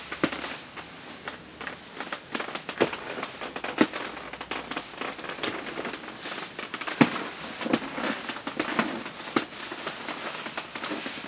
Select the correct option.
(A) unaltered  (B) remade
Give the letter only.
A